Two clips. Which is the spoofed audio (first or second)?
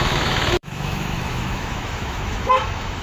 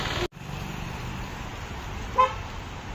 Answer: first